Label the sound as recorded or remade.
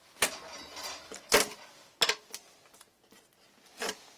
recorded